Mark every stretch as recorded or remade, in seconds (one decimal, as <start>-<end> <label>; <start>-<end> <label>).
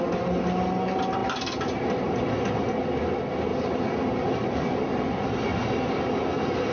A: 0.0-6.7 recorded